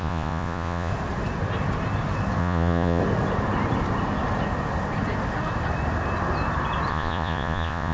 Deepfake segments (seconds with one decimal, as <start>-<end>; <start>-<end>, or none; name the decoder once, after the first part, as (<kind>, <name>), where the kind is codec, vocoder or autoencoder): 0.0-0.9 (vocoder, Vocos); 2.4-3.0; 6.9-7.9